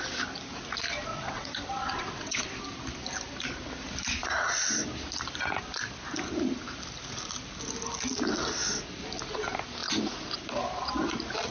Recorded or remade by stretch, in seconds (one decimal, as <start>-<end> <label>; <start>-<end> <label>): 0.0-1.1 recorded; 1.1-2.6 remade; 2.6-11.5 recorded